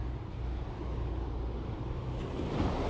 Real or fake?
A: real